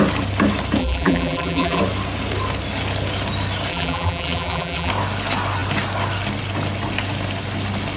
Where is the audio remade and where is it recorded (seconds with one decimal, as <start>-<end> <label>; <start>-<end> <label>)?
0.0-0.8 recorded; 0.8-1.8 remade; 1.8-3.7 recorded; 3.7-4.9 remade; 4.9-8.0 recorded